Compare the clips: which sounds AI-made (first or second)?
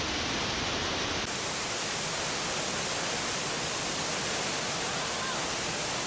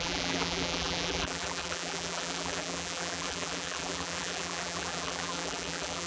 second